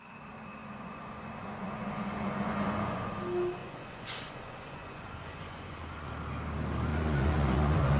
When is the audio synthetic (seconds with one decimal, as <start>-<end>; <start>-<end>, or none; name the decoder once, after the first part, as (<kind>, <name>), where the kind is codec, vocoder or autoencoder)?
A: 0.6-3.1 (vocoder, Vocos); 3.6-6.1; 6.9-8.0